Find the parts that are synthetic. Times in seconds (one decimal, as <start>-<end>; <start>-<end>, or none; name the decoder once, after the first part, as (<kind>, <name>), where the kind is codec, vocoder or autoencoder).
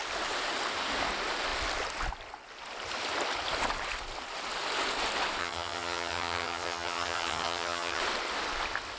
5.4-8.0 (vocoder, HiFi-GAN)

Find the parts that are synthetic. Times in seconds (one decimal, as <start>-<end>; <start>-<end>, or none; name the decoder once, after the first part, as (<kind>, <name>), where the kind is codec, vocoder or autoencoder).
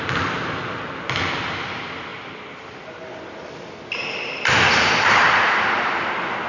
2.1-3.6 (vocoder, BigVGAN v2)